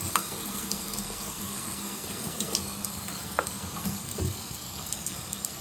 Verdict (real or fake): fake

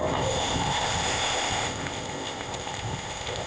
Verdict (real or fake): fake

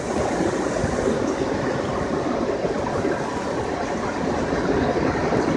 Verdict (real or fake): real